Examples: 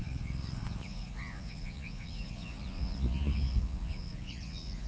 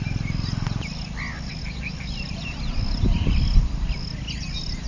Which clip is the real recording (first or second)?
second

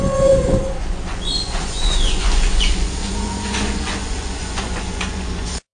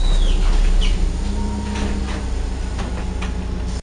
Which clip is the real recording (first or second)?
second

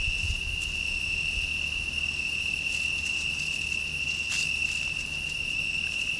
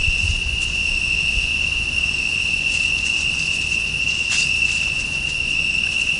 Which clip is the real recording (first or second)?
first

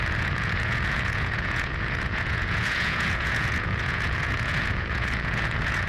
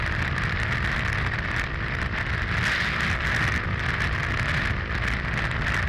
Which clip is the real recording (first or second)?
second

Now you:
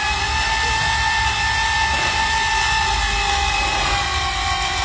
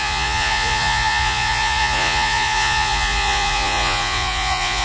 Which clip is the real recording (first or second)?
first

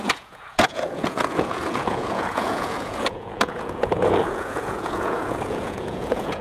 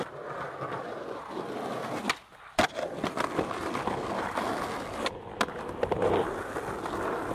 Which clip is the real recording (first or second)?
second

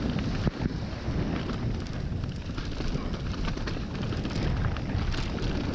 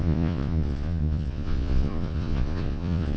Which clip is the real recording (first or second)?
first